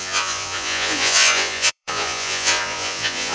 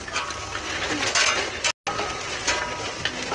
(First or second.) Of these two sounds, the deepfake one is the first